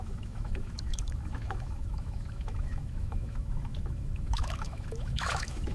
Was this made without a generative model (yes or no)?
no